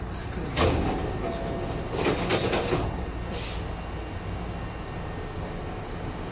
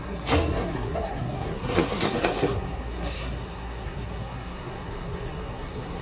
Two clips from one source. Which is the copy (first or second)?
second